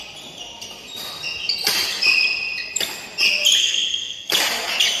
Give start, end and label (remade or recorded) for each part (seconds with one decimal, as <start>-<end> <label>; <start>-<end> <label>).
0.0-3.6 recorded; 3.6-4.3 remade; 4.3-5.0 recorded